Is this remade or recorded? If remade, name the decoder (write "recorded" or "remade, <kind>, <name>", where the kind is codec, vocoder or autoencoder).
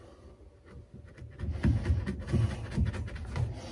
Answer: recorded